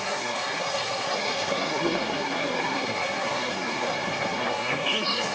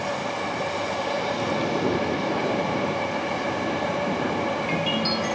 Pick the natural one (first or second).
second